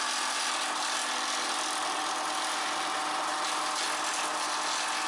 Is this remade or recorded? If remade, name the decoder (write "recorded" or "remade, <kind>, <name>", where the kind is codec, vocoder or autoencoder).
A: recorded